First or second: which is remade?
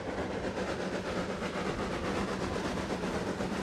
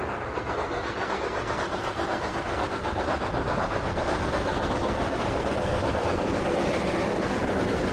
second